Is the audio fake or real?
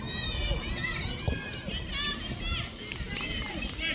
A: real